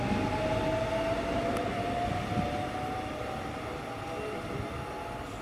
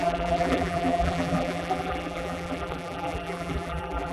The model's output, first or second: second